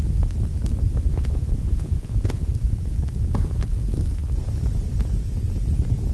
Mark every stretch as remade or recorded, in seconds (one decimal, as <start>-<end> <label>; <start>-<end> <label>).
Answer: 0.0-1.1 recorded; 1.1-2.5 remade; 2.5-6.1 recorded